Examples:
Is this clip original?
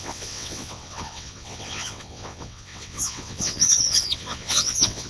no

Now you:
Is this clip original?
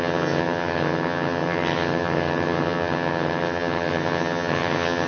no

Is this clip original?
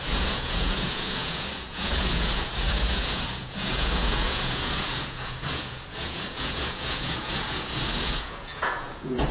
no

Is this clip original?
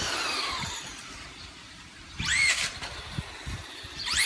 no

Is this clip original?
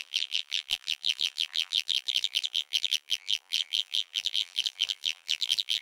no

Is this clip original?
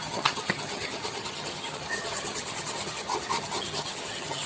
no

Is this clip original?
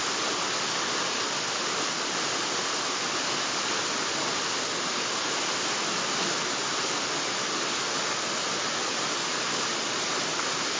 yes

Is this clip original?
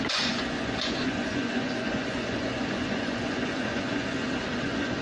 no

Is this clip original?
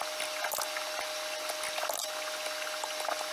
yes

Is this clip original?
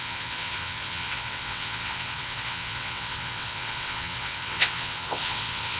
no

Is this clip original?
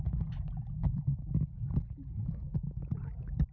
yes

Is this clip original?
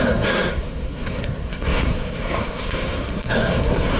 no